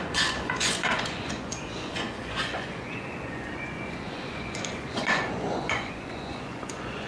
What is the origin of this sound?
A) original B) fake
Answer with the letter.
B